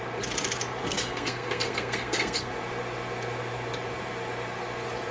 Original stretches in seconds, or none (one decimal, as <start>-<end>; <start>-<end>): 0.0-0.8; 2.5-5.1